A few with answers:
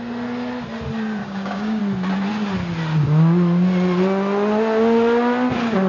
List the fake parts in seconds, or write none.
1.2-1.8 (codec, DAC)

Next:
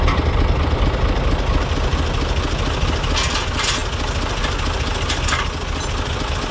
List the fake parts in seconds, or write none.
none

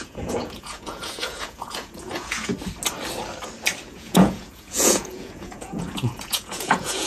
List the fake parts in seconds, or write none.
0.0-2.5 (vocoder, Vocos); 3.9-7.1

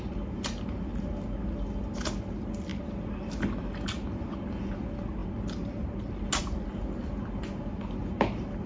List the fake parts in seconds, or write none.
none

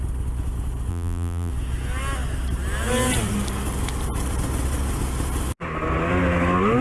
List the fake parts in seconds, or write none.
0.9-1.5 (vocoder, BigVGAN v2)

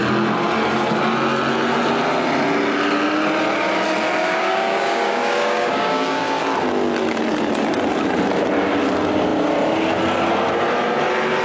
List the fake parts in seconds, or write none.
4.2-6.4 (codec, DAC)